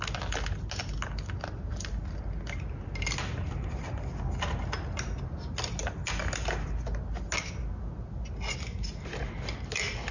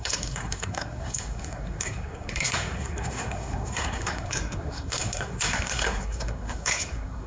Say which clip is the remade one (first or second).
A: second